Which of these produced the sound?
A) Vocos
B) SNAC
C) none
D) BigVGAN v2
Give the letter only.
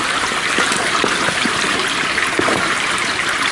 C